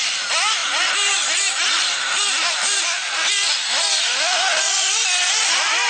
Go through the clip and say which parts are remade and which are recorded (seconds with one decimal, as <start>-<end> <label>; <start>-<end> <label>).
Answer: 0.0-0.6 remade; 0.6-1.6 recorded; 1.6-3.0 remade; 3.0-4.2 recorded; 4.2-5.9 remade